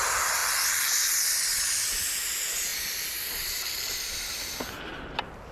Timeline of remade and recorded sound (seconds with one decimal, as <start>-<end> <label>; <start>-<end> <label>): 0.0-5.5 recorded

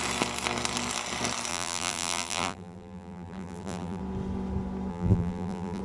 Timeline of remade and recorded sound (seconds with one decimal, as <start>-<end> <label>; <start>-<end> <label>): 0.0-1.5 recorded; 1.5-4.0 remade; 4.0-4.9 recorded; 4.9-5.8 remade

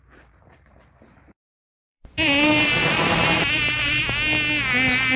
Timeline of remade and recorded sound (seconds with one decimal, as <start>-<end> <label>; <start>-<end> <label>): 0.0-4.0 remade; 4.0-5.2 recorded

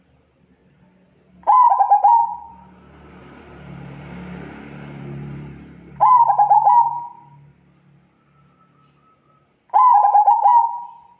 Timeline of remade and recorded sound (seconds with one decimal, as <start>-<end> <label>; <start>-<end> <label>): 0.0-3.2 recorded; 3.2-6.4 remade; 6.4-11.2 recorded

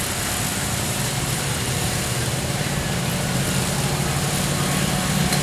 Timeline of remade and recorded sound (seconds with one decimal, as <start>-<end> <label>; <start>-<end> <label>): 0.0-0.5 recorded; 0.5-3.1 remade; 3.1-5.4 recorded

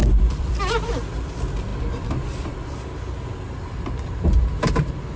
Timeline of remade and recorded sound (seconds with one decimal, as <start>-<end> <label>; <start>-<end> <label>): 0.0-0.6 remade; 0.6-5.2 recorded

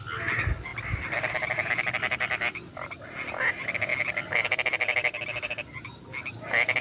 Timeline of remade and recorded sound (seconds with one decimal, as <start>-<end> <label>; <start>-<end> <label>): 0.0-6.8 recorded